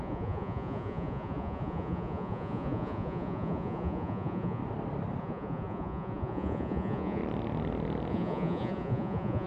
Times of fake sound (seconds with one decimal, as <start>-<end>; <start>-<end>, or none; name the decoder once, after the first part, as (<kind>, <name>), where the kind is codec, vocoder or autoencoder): 0.0-4.6 (vocoder, Vocos); 5.2-7.2; 8.1-9.5